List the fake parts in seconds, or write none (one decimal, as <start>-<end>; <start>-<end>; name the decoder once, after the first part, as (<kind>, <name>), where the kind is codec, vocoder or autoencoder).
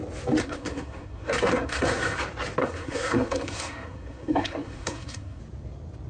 0.4-2.2 (codec, SNAC); 2.6-5.4